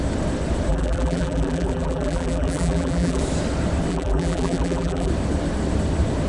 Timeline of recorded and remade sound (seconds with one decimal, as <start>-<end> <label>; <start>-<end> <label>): 0.0-0.7 recorded; 0.7-3.2 remade; 3.2-3.9 recorded; 3.9-5.1 remade; 5.1-6.3 recorded